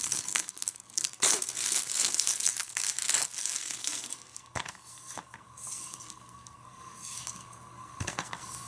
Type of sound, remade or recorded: remade